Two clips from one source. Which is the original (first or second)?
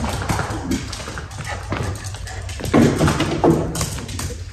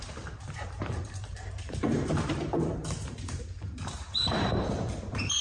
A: first